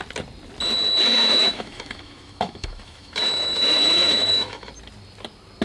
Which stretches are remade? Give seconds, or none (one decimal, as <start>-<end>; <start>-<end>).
1.3-4.7